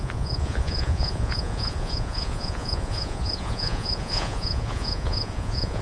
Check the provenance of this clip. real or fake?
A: fake